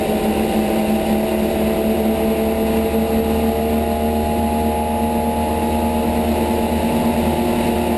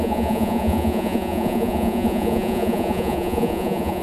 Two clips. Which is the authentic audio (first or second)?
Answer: first